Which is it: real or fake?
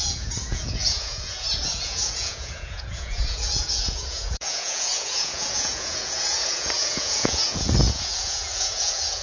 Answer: fake